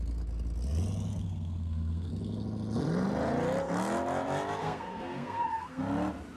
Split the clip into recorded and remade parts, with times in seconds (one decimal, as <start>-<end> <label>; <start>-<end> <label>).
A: 0.0-1.1 recorded; 1.1-2.1 remade; 2.1-4.6 recorded; 4.6-5.8 remade; 5.8-6.4 recorded